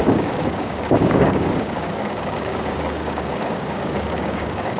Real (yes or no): no